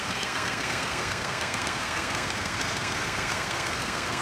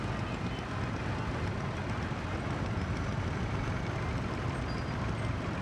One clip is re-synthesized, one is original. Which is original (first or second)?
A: second